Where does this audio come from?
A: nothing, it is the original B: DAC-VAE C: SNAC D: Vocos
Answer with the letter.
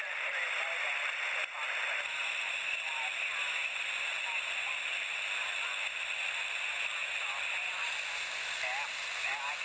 A